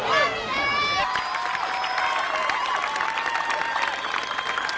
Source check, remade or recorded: recorded